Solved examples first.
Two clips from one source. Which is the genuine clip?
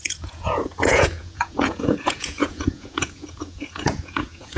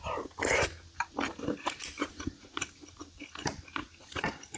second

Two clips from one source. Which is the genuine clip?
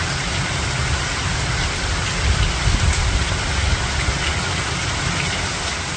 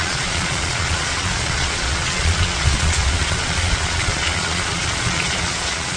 first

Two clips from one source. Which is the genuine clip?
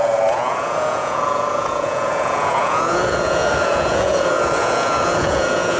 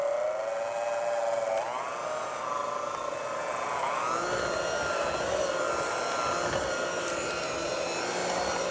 second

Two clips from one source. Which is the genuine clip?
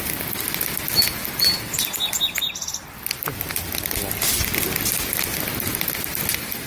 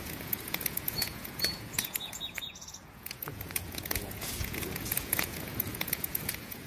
first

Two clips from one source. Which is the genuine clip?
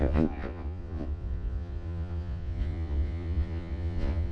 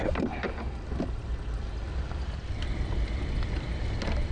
second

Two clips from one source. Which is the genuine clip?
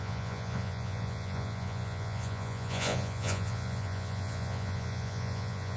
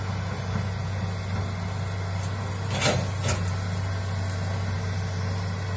second